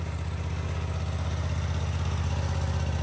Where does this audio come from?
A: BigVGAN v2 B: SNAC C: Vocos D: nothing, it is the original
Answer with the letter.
D